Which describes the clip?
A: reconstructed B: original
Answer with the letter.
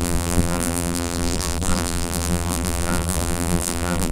A